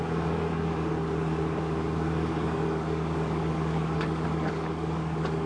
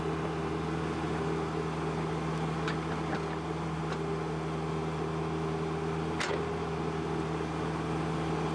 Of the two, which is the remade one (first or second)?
first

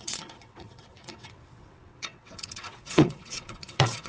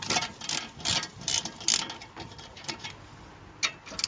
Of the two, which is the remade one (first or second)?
first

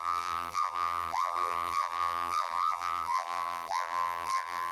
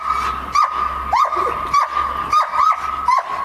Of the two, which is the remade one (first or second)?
first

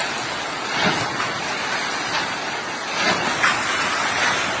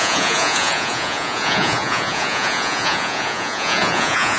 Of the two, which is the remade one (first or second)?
second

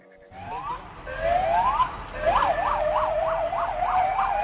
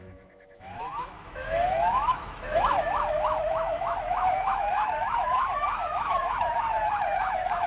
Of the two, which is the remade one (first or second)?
second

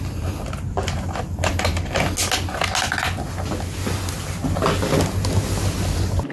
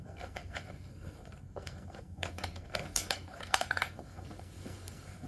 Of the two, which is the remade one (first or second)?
second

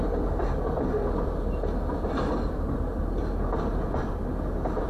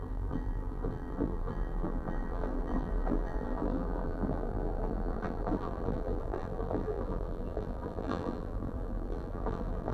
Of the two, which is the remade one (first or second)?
second